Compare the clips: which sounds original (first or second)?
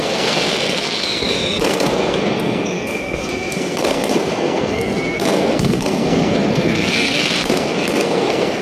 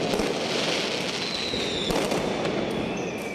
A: second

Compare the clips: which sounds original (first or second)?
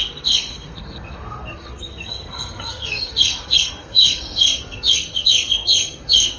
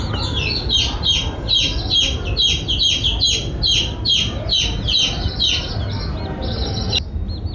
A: second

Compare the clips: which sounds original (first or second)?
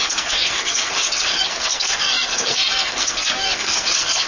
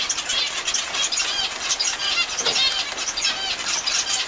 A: second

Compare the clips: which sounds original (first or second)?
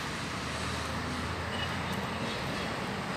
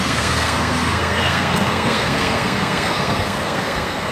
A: first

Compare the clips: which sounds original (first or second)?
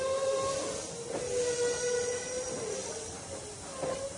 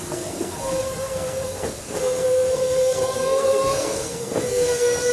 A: first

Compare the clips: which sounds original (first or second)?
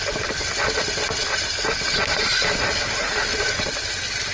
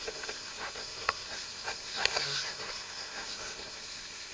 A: first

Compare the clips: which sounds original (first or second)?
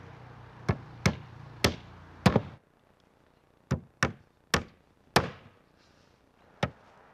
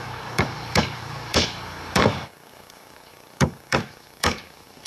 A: first